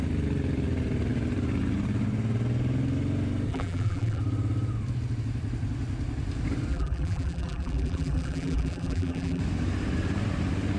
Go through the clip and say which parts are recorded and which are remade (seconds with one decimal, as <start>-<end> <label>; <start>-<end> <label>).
0.0-3.5 recorded; 3.5-4.2 remade; 4.2-6.7 recorded; 6.7-9.4 remade; 9.4-10.8 recorded